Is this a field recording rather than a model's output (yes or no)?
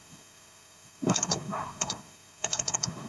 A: no